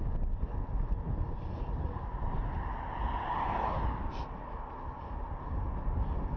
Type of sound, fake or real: real